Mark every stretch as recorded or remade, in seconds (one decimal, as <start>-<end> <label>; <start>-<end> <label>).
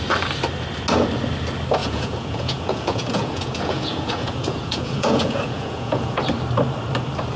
0.0-1.8 recorded; 1.8-6.2 remade; 6.2-7.4 recorded